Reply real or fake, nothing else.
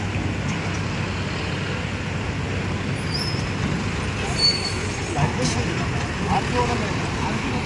real